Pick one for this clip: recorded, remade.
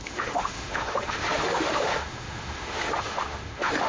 remade